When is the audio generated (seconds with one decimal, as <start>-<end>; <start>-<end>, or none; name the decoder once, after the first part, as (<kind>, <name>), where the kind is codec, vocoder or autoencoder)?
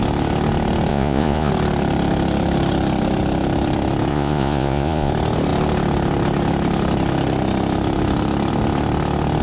0.9-1.5 (vocoder, Vocos); 4.1-5.1